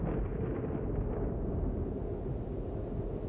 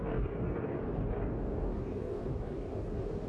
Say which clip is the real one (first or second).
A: first